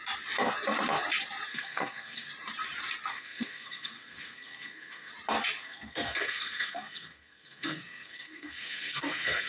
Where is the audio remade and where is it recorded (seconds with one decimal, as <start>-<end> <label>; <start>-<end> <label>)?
0.0-1.5 recorded; 1.5-2.3 remade; 2.3-3.1 recorded; 3.1-5.1 remade; 5.1-5.6 recorded; 5.6-9.5 remade